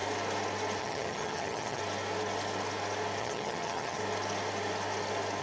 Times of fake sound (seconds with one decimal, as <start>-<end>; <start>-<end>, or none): 0.8-1.8; 3.2-4.0